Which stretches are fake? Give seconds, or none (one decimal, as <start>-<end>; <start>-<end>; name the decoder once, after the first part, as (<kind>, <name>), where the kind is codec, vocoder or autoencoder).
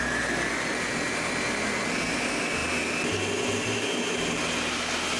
none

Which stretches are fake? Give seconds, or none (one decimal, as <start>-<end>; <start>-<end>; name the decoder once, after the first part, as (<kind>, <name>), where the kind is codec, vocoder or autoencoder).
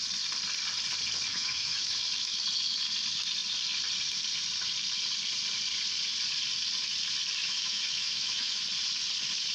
1.3-1.9 (autoencoder, DAC-VAE); 7.4-8.6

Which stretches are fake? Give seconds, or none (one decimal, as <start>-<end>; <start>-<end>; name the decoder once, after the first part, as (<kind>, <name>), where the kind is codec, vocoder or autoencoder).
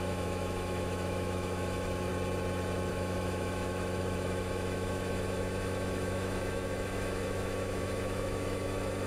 0.0-2.1 (autoencoder, DAC-VAE); 2.9-9.1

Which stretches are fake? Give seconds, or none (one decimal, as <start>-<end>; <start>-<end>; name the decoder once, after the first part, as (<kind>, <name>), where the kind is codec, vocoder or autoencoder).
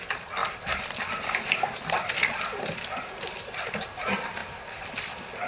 none